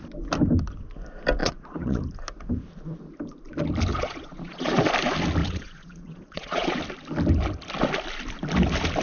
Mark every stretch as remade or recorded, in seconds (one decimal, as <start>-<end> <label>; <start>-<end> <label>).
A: 0.0-1.4 recorded; 1.4-2.0 remade; 2.0-3.9 recorded; 3.9-4.9 remade; 4.9-5.4 recorded; 5.4-6.8 remade; 6.8-9.0 recorded

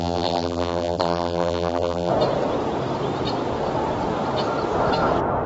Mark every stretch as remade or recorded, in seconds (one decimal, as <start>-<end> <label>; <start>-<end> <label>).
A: 0.0-2.1 remade; 2.1-5.5 recorded

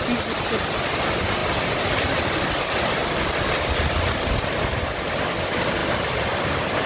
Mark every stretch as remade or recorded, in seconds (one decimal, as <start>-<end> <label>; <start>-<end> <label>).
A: 0.0-6.9 recorded